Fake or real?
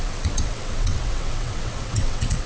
fake